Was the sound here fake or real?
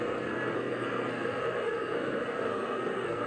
fake